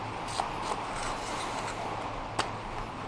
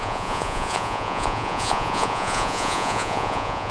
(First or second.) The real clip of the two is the first